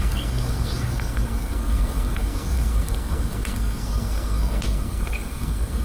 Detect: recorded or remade remade